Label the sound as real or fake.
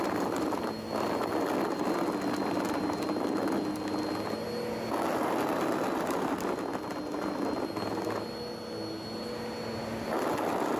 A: real